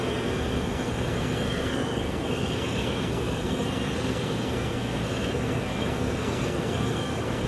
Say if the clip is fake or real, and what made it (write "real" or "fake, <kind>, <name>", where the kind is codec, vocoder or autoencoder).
fake, codec, SNAC